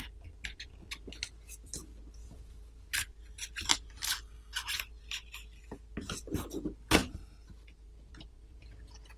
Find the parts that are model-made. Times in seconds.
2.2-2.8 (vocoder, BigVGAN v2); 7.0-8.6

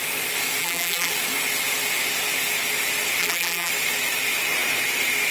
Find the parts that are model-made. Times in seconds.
0.6-1.1 (vocoder, BigVGAN v2); 3.2-3.7

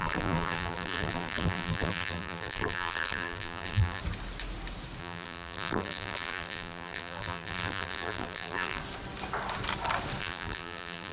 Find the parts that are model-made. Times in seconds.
0.0-4.0 (vocoder, BigVGAN v2); 5.0-8.8; 10.2-11.1